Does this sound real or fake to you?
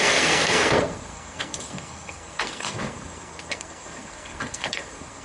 fake